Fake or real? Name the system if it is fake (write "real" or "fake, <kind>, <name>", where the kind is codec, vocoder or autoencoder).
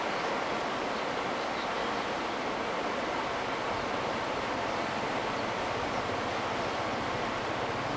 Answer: real